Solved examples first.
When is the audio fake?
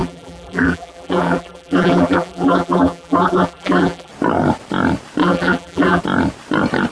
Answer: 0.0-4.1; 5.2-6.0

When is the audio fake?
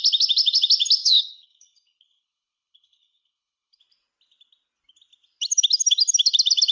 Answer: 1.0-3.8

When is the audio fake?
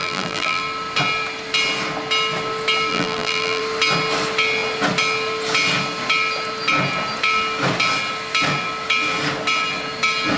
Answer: 0.0-0.6; 2.9-3.6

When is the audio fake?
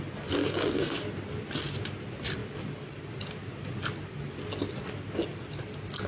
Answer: 0.4-1.0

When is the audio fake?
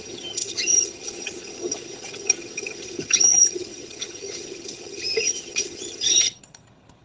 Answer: 0.0-7.0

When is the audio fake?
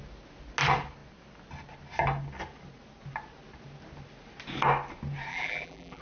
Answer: 5.3-6.0